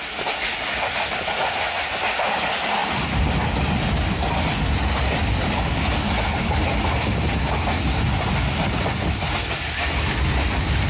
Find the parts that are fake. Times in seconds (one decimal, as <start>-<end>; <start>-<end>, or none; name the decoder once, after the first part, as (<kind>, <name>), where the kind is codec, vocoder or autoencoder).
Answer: none